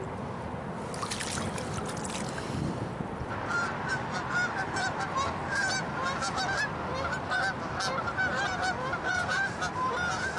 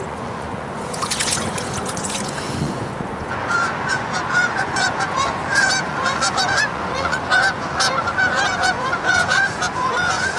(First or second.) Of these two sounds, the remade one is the second